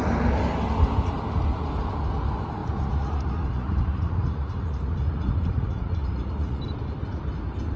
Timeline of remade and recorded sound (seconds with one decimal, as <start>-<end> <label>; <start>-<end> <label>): 0.0-2.6 recorded; 2.6-6.6 remade; 6.6-7.8 recorded